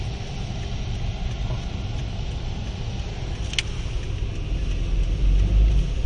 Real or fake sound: real